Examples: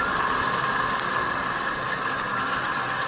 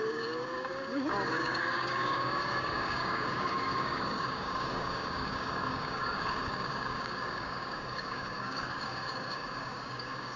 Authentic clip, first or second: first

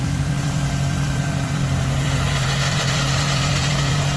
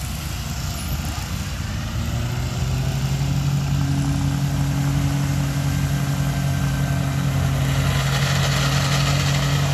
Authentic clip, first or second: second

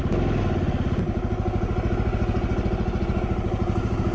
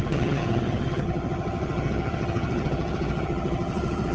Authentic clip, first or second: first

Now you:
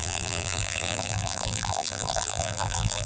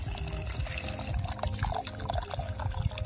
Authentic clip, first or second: second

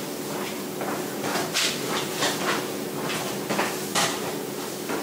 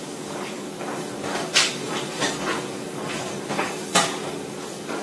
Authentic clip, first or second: first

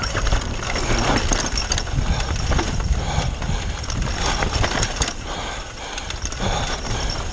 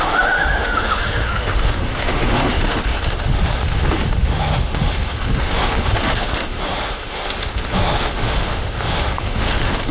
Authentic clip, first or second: first